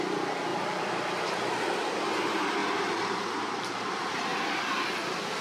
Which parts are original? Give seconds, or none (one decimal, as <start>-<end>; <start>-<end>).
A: 0.0-0.5; 1.3-2.6; 3.9-5.4